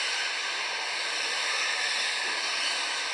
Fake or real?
real